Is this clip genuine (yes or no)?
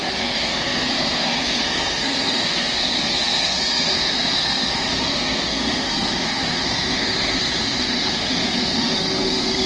no